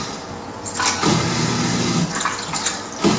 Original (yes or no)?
yes